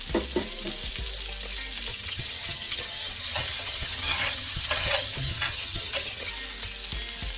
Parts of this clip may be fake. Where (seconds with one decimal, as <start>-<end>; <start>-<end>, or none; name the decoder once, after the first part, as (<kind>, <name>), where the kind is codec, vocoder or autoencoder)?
1.9-6.3 (vocoder, HiFi-GAN)